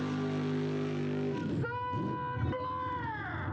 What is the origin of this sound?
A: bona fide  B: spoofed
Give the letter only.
A